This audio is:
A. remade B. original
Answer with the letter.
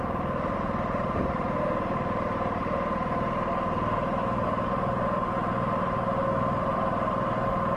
B